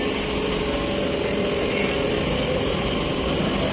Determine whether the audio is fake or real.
real